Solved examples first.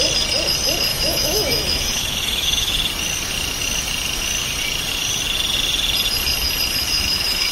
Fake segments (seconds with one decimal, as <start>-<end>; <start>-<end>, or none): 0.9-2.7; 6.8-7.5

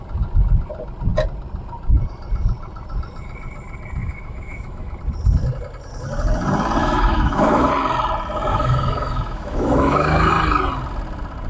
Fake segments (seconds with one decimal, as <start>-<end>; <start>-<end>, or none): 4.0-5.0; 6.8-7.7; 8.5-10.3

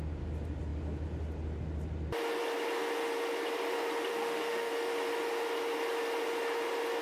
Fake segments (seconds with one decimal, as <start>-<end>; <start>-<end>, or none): 4.1-4.7